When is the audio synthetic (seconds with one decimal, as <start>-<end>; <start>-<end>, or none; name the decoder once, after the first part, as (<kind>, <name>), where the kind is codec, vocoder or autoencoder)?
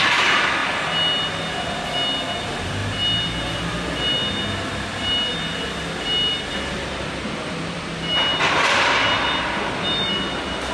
none